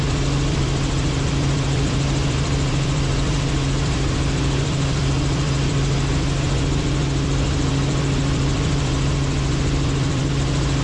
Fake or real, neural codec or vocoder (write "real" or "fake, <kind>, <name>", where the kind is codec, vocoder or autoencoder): fake, vocoder, BigVGAN v2